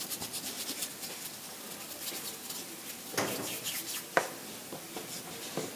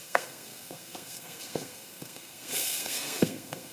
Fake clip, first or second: second